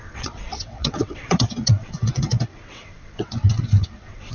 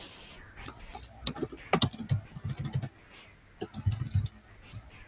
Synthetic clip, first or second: first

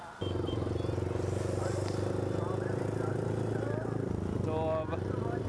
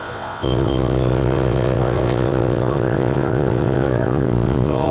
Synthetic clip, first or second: second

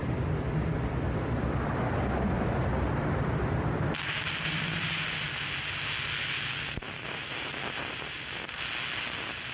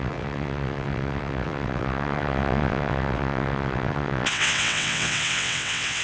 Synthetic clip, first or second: second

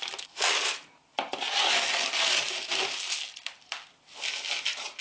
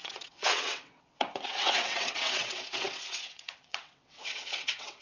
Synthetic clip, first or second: second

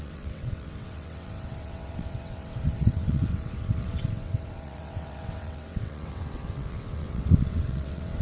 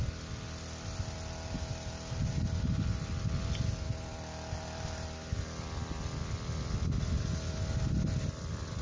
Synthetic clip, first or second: first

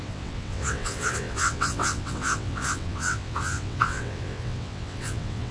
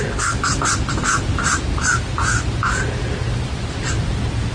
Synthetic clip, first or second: first